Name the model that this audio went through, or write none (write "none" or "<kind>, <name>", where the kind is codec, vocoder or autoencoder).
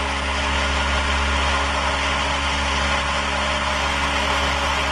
none